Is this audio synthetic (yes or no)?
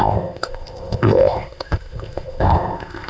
yes